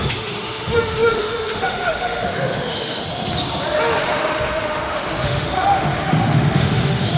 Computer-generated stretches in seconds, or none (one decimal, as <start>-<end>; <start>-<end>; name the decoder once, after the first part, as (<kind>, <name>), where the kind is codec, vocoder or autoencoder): 0.0-3.0 (autoencoder, DAC-VAE); 4.0-7.2